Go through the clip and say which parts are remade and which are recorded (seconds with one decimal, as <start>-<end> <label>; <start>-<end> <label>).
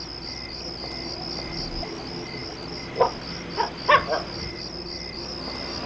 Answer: 0.0-5.9 recorded